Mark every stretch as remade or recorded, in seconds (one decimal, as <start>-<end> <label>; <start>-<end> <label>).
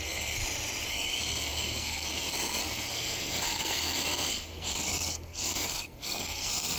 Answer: 0.0-0.4 remade; 0.4-0.9 recorded; 0.9-6.8 remade